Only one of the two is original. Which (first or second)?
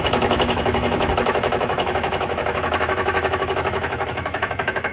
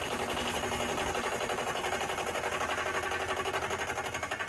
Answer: second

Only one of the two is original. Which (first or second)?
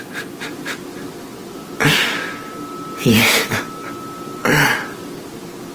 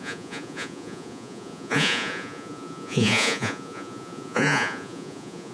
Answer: first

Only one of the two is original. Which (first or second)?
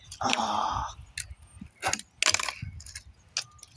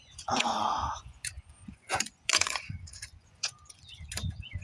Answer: first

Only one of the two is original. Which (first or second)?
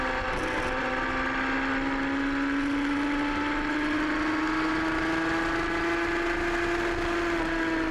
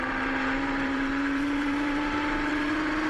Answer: first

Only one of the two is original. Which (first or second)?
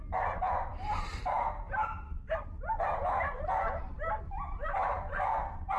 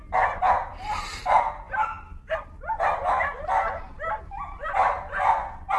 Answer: second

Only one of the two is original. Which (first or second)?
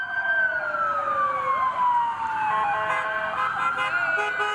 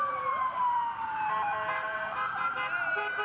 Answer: first